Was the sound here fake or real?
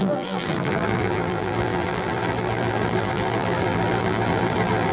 fake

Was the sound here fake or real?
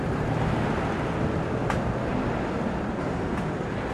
real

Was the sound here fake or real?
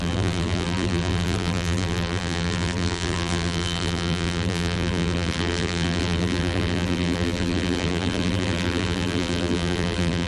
fake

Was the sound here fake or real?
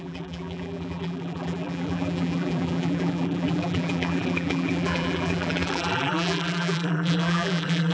fake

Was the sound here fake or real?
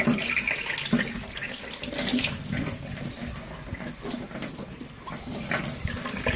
real